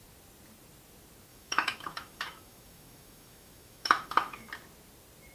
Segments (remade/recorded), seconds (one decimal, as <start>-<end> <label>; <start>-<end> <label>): 0.0-1.3 recorded; 1.3-4.5 remade; 4.5-5.3 recorded